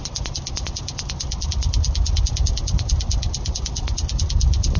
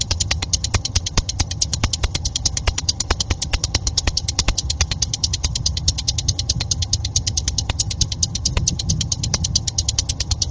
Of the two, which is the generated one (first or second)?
second